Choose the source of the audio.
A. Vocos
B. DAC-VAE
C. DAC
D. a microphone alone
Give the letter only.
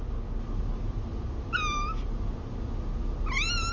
D